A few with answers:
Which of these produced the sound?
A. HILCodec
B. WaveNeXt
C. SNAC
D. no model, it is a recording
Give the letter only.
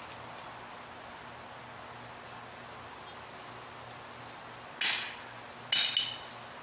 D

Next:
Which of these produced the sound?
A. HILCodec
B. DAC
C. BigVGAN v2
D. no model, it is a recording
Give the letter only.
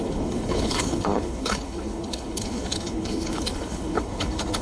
A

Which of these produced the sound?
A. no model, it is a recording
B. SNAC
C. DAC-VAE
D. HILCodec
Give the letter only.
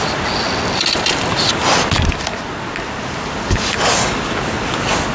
A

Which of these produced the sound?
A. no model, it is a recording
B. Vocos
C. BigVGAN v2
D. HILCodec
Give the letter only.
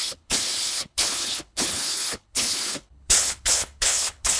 D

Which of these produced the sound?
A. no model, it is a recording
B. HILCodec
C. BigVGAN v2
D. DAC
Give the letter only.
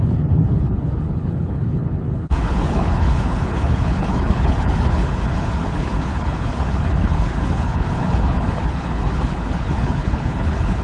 B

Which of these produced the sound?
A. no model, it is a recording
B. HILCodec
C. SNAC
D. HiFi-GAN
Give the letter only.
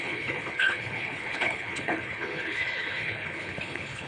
B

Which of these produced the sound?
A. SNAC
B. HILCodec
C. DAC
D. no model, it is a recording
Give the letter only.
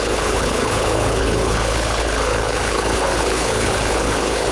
B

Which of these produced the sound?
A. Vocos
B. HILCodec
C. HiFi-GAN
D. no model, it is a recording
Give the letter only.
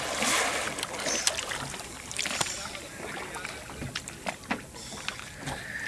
D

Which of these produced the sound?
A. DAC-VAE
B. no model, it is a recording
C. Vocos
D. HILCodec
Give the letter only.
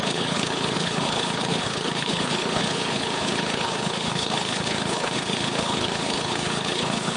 D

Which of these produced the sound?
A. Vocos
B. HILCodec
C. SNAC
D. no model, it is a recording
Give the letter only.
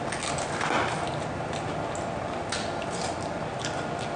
D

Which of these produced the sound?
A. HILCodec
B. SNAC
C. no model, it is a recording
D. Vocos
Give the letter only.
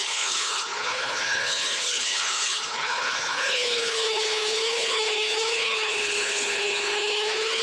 A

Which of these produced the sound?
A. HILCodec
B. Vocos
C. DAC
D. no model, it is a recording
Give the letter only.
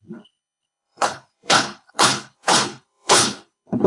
A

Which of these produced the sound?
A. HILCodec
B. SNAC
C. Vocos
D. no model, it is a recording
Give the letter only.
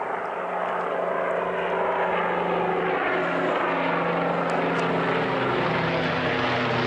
D